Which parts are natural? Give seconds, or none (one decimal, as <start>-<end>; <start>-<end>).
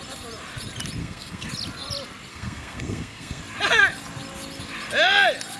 0.0-1.0; 1.5-2.3; 3.4-5.6